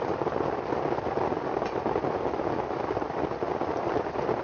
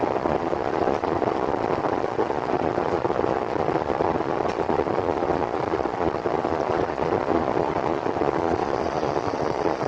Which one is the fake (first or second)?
second